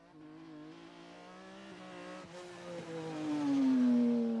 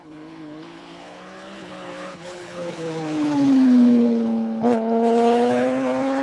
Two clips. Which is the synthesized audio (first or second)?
second